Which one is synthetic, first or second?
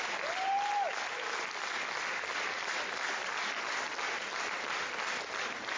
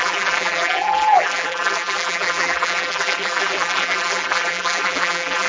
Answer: second